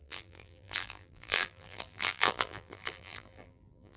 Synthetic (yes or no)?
yes